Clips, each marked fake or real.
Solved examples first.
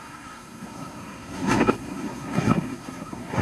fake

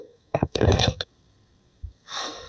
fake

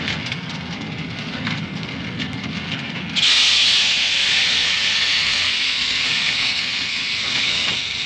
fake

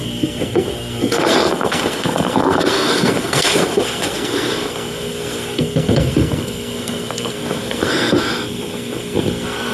fake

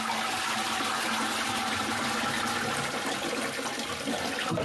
real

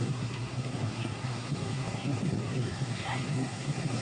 fake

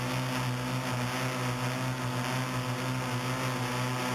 real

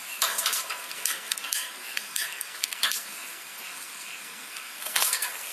fake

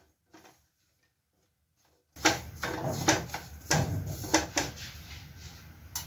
real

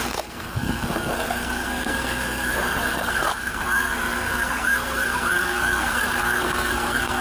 fake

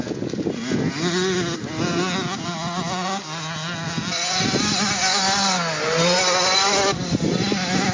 real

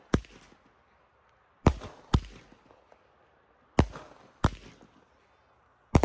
real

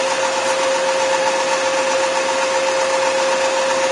real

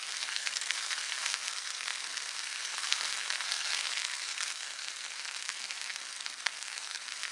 fake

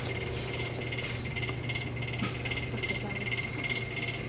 real